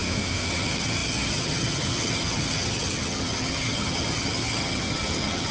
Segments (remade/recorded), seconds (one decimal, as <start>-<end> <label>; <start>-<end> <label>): 0.0-0.5 recorded; 0.5-5.5 remade